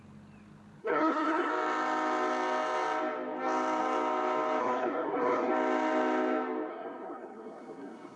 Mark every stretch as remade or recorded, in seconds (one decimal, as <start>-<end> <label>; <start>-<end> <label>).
0.0-0.8 recorded; 0.8-1.5 remade; 1.5-4.6 recorded; 4.6-5.5 remade; 5.5-6.7 recorded; 6.7-8.2 remade